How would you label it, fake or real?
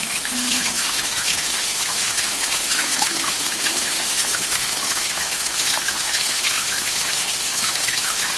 fake